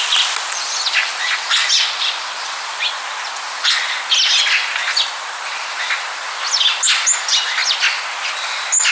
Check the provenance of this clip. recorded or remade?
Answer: recorded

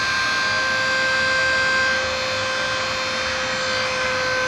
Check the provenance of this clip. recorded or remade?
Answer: recorded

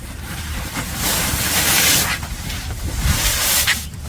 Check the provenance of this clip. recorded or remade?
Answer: remade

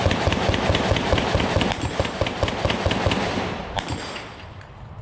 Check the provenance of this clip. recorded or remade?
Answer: remade